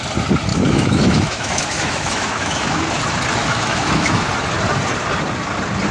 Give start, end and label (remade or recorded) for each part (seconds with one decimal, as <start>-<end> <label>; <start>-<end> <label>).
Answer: 0.0-0.5 recorded; 0.5-2.8 remade; 2.8-3.4 recorded; 3.4-4.3 remade; 4.3-5.9 recorded